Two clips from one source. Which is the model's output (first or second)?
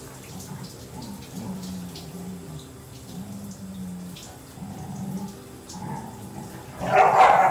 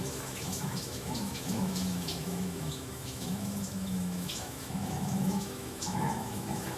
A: second